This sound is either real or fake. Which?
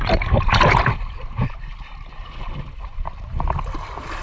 real